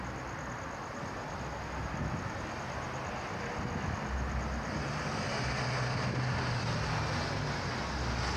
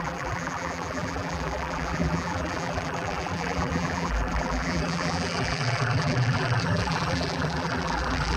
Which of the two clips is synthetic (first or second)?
second